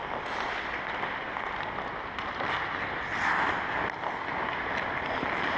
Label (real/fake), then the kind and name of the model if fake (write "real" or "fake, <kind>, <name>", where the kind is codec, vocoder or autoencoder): real